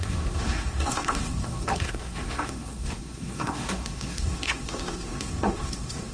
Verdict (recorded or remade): remade